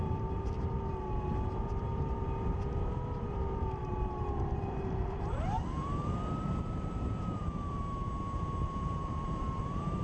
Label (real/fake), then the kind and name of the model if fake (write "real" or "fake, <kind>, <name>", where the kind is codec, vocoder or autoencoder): fake, vocoder, BigVGAN v2